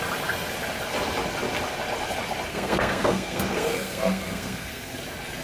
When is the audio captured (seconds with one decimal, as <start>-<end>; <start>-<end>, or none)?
0.0-2.5; 5.0-5.4